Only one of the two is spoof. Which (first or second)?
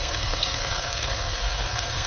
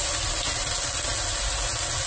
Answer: first